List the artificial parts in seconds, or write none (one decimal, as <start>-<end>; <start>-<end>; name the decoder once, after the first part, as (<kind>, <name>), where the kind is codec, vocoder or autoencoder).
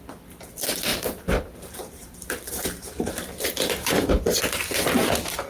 0.9-4.2 (vocoder, BigVGAN v2)